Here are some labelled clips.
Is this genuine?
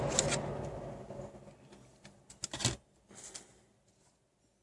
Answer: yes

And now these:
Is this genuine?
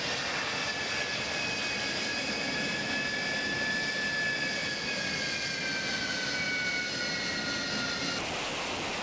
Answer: yes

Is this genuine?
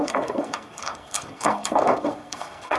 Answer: no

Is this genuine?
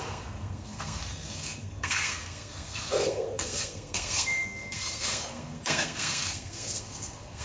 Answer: no